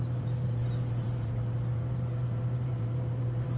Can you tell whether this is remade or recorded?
remade